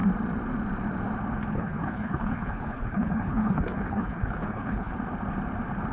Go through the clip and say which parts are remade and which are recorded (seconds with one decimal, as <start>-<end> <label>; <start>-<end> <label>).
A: 0.0-1.5 recorded; 1.5-5.0 remade; 5.0-5.9 recorded